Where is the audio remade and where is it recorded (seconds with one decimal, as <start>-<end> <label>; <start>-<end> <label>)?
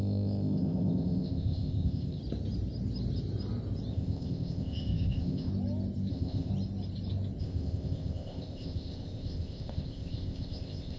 0.0-2.2 remade; 2.2-3.9 recorded; 3.9-5.5 remade; 5.5-6.1 recorded; 6.1-6.5 remade; 6.5-7.4 recorded; 7.4-11.0 remade